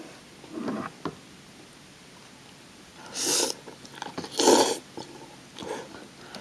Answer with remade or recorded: recorded